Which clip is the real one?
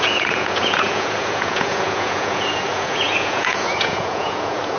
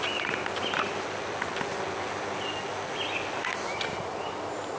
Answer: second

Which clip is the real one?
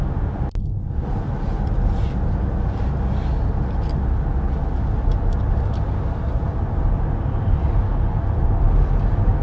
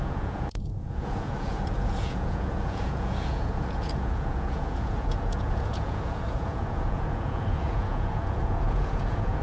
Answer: first